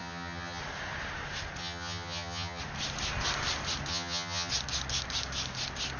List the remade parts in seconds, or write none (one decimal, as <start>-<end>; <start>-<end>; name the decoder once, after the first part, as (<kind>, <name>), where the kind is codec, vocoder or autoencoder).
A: 0.0-0.6 (vocoder, HiFi-GAN); 1.6-2.6; 3.9-4.5